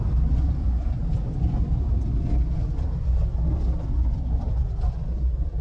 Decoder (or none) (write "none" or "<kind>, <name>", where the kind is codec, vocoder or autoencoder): none